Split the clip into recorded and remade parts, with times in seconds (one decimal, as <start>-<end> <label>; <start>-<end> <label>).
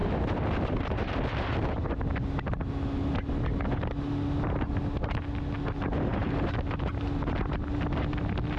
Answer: 0.0-8.6 recorded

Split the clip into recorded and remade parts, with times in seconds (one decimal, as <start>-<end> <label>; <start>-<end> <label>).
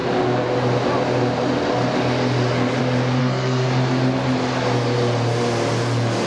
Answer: 0.0-3.2 recorded; 3.2-3.7 remade; 3.7-6.3 recorded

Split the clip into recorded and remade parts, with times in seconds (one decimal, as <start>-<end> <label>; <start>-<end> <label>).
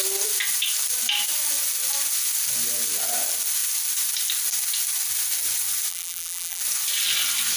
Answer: 0.0-5.9 recorded; 5.9-6.6 remade; 6.6-7.6 recorded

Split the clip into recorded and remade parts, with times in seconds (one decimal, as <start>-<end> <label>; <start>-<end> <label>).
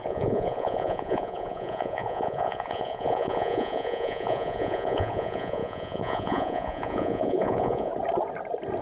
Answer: 0.0-7.9 remade; 7.9-8.8 recorded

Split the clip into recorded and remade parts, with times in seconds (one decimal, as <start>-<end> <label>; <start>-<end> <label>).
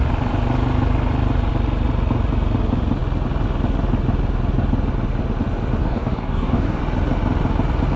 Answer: 0.0-5.8 recorded; 5.8-6.8 remade; 6.8-8.0 recorded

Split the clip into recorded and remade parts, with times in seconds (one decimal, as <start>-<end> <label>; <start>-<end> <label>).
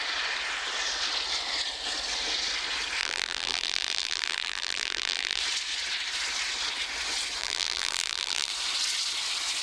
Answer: 0.0-3.0 recorded; 3.0-5.4 remade; 5.4-7.4 recorded; 7.4-8.5 remade; 8.5-9.6 recorded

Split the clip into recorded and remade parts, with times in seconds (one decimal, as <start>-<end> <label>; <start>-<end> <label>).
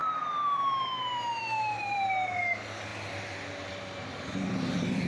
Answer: 0.0-5.1 remade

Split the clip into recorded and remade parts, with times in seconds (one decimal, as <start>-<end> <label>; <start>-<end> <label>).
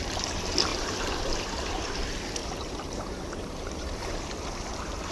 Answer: 0.0-0.7 recorded; 0.7-1.8 remade; 1.8-2.4 recorded; 2.4-4.1 remade; 4.1-5.1 recorded